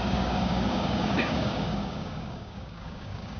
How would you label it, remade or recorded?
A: remade